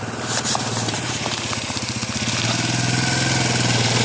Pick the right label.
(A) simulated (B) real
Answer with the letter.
B